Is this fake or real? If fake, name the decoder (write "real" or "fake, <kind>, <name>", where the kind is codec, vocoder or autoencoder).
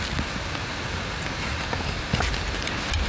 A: real